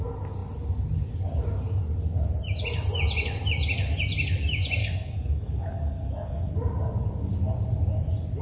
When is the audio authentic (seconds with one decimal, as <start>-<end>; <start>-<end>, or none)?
0.0-4.8; 6.5-8.4